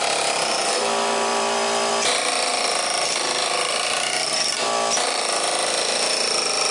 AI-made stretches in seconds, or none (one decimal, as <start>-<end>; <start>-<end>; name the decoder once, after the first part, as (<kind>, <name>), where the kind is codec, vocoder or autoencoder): 1.3-1.9 (vocoder, BigVGAN v2); 2.5-6.3